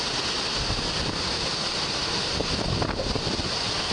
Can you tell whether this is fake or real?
real